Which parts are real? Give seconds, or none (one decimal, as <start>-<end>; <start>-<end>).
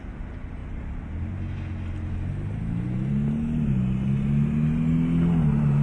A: 0.0-5.8